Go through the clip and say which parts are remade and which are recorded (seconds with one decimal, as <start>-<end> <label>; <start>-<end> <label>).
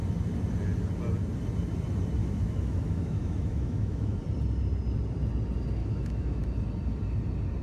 0.0-2.2 recorded; 2.2-4.2 remade; 4.2-5.8 recorded; 5.8-6.4 remade; 6.4-7.6 recorded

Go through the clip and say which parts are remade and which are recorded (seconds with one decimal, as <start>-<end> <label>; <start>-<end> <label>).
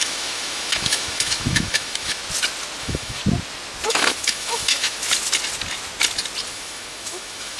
0.0-2.2 remade; 2.2-2.8 recorded; 2.8-3.2 remade; 3.2-3.9 recorded; 3.9-5.0 remade; 5.0-6.5 recorded; 6.5-7.6 remade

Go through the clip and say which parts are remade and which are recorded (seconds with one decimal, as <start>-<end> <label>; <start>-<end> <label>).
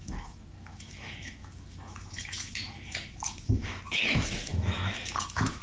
0.0-5.6 remade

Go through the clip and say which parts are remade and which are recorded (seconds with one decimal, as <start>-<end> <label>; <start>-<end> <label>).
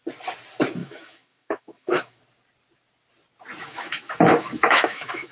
0.0-0.8 recorded; 0.8-2.2 remade; 2.2-3.6 recorded; 3.6-5.3 remade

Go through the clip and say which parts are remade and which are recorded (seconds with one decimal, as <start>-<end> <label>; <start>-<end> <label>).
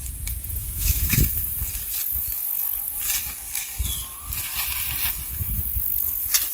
0.0-0.6 recorded; 0.6-1.2 remade; 1.2-6.5 recorded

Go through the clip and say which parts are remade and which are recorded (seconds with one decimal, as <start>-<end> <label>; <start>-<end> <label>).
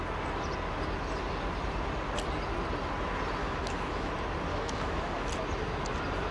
0.0-3.4 recorded; 3.4-4.1 remade; 4.1-4.5 recorded; 4.5-5.3 remade; 5.3-6.3 recorded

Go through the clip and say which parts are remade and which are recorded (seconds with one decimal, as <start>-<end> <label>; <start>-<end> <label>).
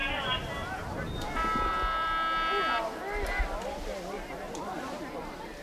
0.0-5.6 recorded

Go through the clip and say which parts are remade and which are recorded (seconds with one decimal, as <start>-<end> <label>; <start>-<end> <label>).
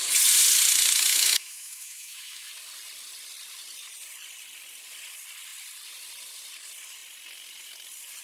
0.0-1.1 recorded; 1.1-2.5 remade; 2.5-8.2 recorded